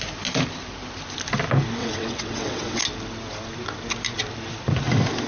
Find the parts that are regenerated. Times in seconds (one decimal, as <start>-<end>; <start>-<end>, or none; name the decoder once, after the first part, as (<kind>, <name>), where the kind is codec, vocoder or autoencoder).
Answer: 1.8-2.8 (vocoder, WaveNeXt)